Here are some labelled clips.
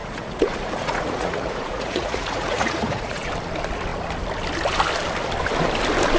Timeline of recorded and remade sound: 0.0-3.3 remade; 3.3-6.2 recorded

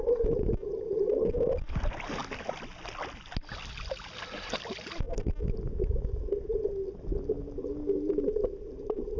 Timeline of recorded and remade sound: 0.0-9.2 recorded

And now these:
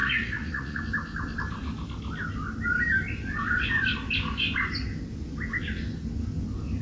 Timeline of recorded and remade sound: 0.0-0.8 remade; 0.8-6.8 recorded

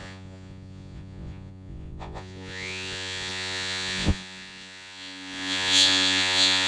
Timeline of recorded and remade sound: 0.0-6.7 remade

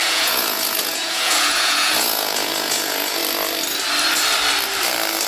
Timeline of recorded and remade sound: 0.0-3.2 remade; 3.2-5.3 recorded

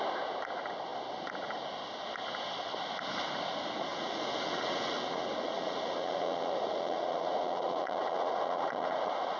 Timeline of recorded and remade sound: 0.0-3.9 recorded; 3.9-9.4 remade